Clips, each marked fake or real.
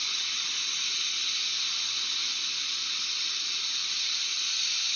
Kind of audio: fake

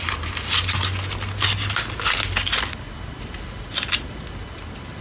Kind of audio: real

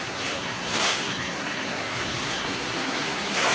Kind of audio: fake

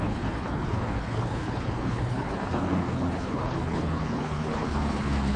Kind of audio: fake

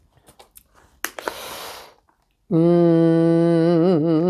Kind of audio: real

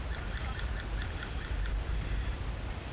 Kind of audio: real